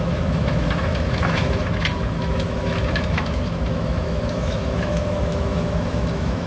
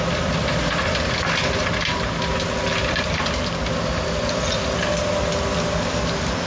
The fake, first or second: first